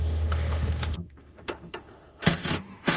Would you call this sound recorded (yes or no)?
no